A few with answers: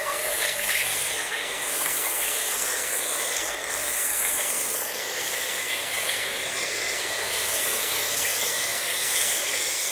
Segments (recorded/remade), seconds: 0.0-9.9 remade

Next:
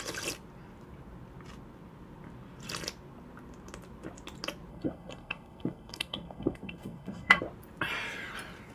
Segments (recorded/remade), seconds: 0.0-4.7 recorded; 4.7-7.4 remade; 7.4-8.7 recorded

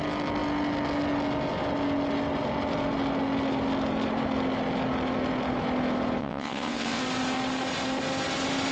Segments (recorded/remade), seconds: 0.0-6.2 recorded; 6.2-7.0 remade; 7.0-8.7 recorded

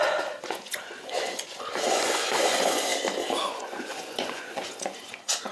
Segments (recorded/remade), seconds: 0.0-2.9 remade; 2.9-3.4 recorded; 3.4-5.5 remade

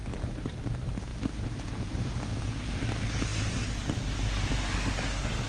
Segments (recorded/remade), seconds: 0.0-0.6 remade; 0.6-1.1 recorded; 1.1-2.1 remade; 2.1-5.5 recorded

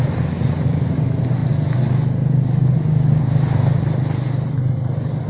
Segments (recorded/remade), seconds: 0.0-5.3 recorded

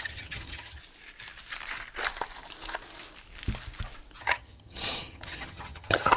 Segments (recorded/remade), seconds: 0.0-0.8 remade; 0.8-4.2 recorded; 4.2-6.2 remade